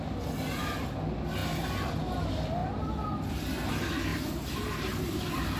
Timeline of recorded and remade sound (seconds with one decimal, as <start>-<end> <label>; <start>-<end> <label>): 0.0-4.1 recorded; 4.1-5.1 remade; 5.1-5.6 recorded